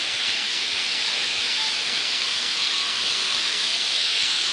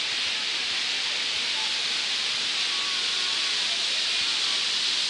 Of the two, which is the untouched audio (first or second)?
second